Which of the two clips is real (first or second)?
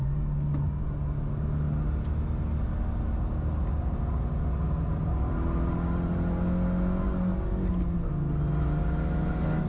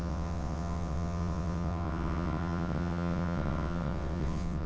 first